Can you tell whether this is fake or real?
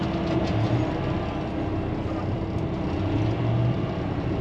real